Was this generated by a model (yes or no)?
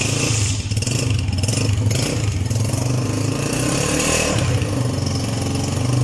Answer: no